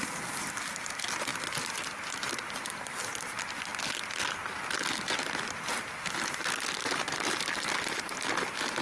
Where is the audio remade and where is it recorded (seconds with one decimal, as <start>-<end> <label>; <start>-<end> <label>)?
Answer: 0.0-8.8 recorded